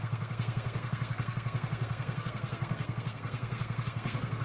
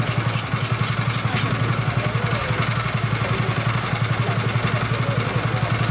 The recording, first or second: second